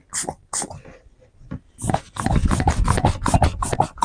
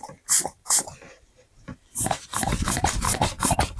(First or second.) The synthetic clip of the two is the second